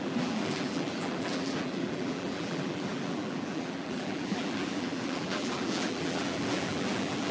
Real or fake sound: fake